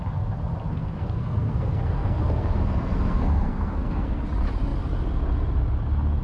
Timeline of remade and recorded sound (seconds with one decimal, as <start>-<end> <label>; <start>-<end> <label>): 0.0-0.7 recorded; 0.7-4.2 remade; 4.2-6.2 recorded